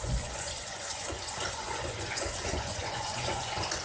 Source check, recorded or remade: remade